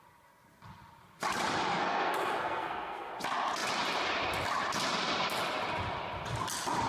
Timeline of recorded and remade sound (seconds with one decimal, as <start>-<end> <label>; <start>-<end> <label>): 0.0-1.7 recorded; 1.7-3.1 remade; 3.1-6.9 recorded